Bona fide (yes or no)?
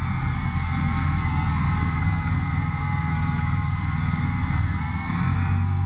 no